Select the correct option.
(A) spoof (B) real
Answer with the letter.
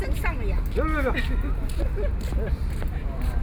B